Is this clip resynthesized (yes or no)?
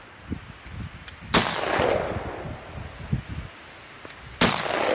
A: no